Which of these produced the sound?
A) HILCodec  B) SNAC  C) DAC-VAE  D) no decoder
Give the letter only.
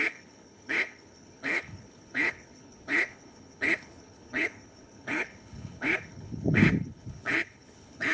A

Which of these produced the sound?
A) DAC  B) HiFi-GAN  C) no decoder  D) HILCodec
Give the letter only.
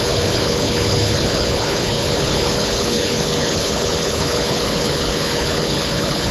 D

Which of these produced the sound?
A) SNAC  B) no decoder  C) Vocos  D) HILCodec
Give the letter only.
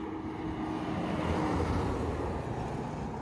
B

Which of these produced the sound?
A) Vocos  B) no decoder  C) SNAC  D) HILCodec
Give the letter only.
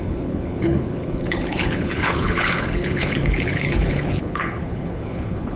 D